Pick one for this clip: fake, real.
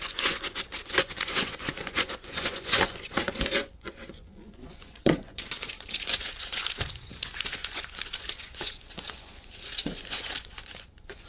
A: fake